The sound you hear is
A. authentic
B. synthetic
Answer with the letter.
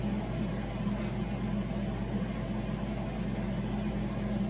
A